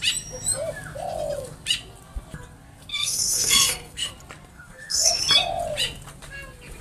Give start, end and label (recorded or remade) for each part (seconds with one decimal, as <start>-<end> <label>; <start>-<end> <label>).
0.0-2.9 recorded; 2.9-4.1 remade; 4.1-4.5 recorded; 4.5-5.2 remade; 5.2-6.8 recorded